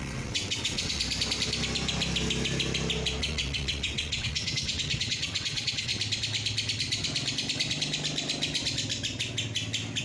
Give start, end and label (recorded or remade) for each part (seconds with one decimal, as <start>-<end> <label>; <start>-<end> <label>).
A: 0.0-1.0 remade; 1.0-3.2 recorded; 3.2-5.9 remade; 5.9-10.0 recorded